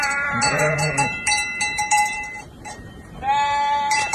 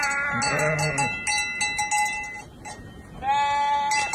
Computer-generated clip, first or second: first